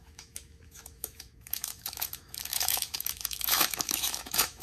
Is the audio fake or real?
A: fake